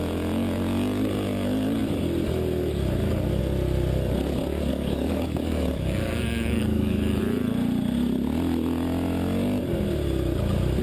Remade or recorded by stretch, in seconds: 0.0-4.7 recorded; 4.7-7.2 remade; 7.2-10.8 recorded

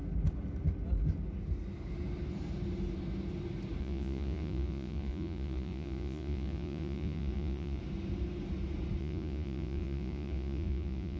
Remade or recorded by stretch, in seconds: 0.0-3.8 recorded; 3.8-7.8 remade; 7.8-9.0 recorded; 9.0-11.2 remade

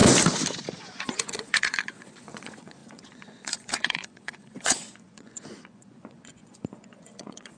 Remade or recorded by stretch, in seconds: 0.0-0.8 recorded; 0.8-7.6 remade

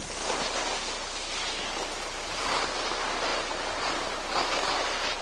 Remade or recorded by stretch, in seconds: 0.0-5.2 recorded

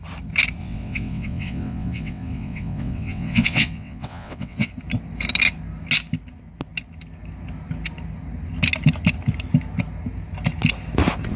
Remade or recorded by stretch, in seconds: 0.0-0.6 recorded; 0.6-4.7 remade; 4.7-11.4 recorded

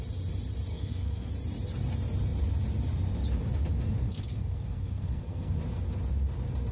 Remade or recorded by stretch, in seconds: 0.0-0.7 recorded; 0.7-1.3 remade; 1.3-4.0 recorded; 4.0-5.5 remade; 5.5-6.7 recorded